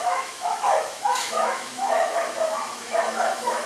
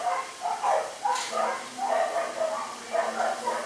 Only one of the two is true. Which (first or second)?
second